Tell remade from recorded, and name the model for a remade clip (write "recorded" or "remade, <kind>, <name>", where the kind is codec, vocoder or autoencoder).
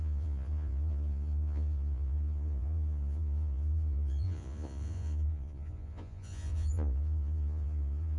remade, vocoder, Vocos